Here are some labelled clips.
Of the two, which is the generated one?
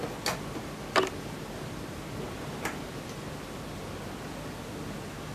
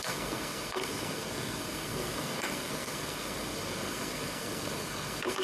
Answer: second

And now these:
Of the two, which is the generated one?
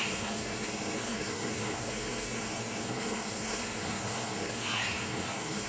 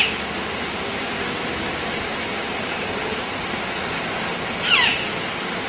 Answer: first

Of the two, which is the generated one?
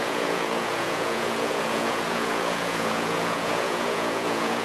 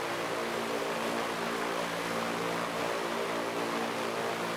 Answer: first